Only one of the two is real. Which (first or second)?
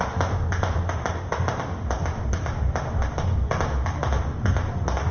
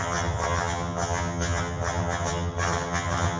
first